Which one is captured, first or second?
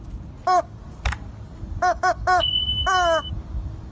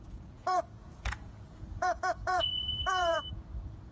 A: first